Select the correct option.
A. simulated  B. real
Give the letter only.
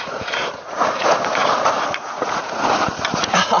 A